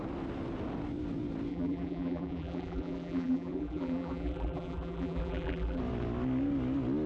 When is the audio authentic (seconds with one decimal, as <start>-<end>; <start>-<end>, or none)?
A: 0.0-1.5; 5.8-7.1